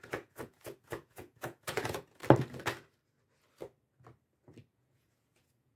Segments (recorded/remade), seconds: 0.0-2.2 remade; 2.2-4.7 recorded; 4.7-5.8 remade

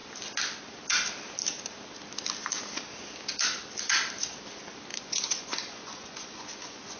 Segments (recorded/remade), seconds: 0.0-4.9 recorded; 4.9-7.0 remade

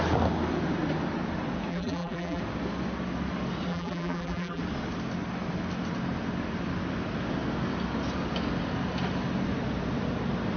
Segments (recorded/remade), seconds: 0.0-1.7 recorded; 1.7-2.4 remade; 2.4-3.7 recorded; 3.7-4.6 remade; 4.6-10.6 recorded

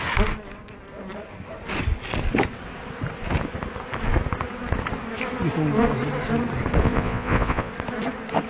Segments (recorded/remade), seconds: 0.0-6.8 recorded; 6.8-7.7 remade; 7.7-8.5 recorded